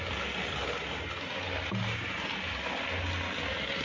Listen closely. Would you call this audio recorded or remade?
recorded